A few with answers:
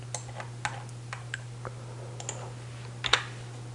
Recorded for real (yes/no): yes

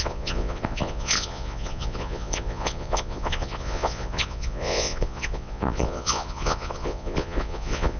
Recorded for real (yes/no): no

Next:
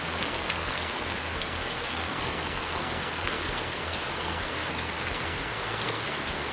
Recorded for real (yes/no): no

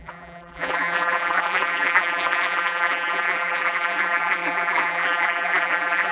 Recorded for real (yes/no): no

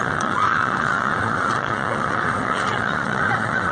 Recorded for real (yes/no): no